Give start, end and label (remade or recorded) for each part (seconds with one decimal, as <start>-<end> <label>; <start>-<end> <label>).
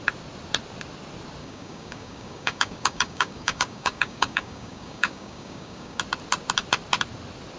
0.0-1.4 recorded; 1.4-6.0 remade; 6.0-7.6 recorded